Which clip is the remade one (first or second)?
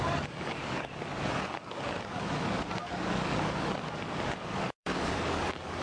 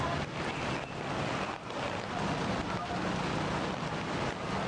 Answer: first